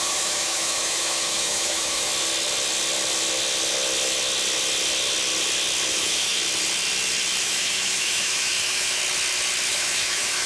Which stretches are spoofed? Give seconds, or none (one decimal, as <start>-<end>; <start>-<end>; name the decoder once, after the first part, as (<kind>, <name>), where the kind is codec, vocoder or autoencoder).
0.0-2.1 (autoencoder, DAC-VAE); 5.9-6.4; 7.4-9.0; 9.7-10.5